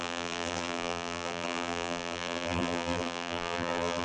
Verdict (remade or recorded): remade